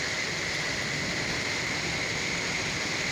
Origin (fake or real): real